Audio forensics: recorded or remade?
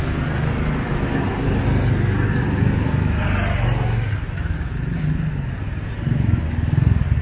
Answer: recorded